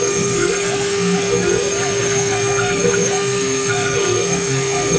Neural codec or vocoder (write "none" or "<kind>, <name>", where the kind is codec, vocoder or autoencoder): codec, SNAC